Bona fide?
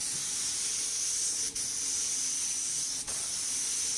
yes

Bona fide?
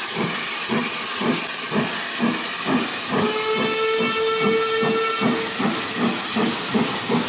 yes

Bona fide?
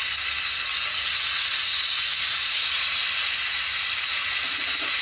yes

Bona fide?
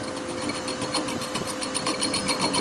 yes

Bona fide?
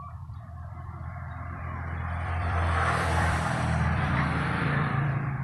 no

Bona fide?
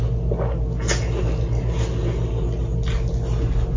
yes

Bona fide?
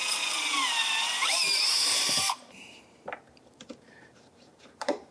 no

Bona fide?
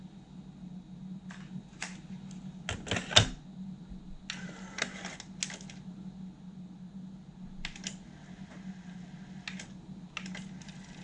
yes